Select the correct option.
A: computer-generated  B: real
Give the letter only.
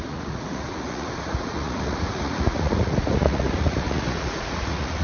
A